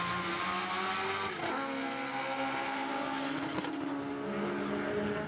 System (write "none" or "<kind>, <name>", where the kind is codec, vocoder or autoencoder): none